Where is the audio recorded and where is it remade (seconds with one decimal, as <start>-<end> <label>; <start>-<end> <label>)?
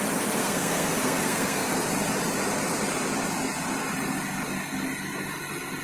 0.0-0.4 recorded; 0.4-1.7 remade; 1.7-5.8 recorded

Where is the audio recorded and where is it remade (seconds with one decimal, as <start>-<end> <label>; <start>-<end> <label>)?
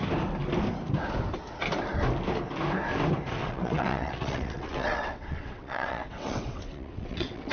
0.0-3.4 recorded; 3.4-7.5 remade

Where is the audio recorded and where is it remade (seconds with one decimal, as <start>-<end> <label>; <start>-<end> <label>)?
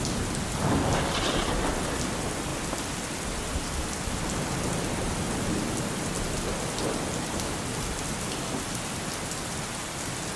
0.0-10.4 recorded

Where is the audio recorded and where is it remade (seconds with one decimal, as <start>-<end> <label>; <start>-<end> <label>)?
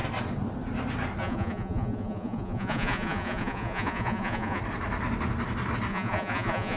0.0-1.2 recorded; 1.2-4.6 remade; 4.6-5.9 recorded; 5.9-6.8 remade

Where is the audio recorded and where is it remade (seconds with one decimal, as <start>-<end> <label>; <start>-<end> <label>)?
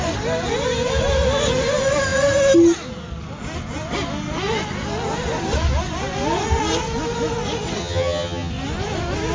0.0-7.8 recorded; 7.8-8.5 remade; 8.5-9.3 recorded